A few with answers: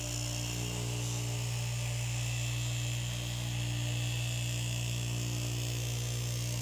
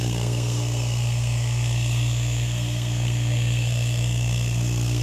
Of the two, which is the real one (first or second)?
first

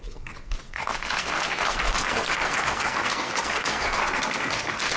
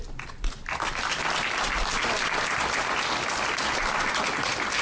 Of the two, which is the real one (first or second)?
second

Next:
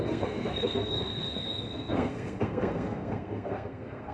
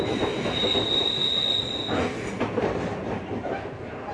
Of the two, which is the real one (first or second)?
second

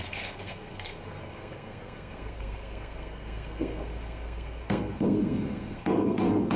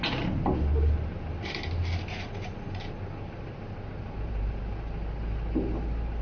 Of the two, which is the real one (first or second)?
second